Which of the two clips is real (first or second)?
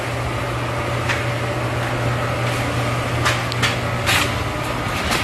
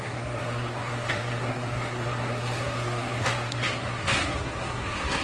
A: first